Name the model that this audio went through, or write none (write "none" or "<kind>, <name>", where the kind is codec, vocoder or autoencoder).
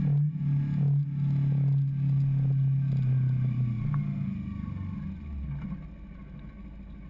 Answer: none